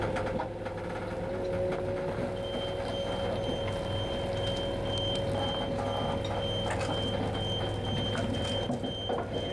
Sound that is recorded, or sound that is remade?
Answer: recorded